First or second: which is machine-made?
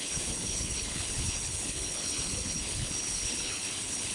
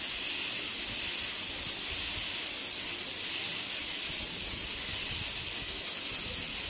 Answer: first